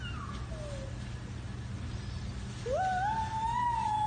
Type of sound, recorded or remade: recorded